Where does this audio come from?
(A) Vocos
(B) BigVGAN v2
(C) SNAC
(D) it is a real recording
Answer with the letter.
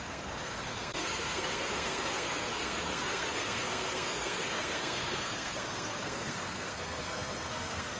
C